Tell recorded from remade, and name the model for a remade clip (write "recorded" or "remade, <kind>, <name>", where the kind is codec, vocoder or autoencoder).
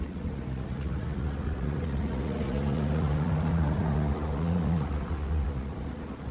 remade, vocoder, Vocos